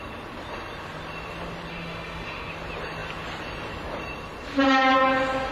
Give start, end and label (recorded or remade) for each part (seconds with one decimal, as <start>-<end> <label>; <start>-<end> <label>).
0.0-1.7 recorded; 1.7-2.5 remade; 2.5-5.5 recorded